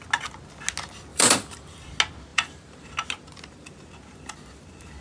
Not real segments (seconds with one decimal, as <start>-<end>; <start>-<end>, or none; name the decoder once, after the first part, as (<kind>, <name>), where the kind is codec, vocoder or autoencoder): 1.1-1.9 (vocoder, BigVGAN v2); 2.3-2.9